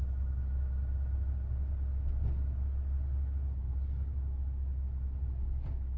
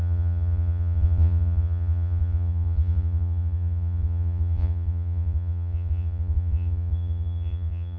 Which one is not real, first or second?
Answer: second